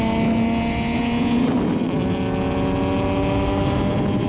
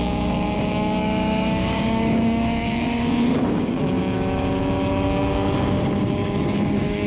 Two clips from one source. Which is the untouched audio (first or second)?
first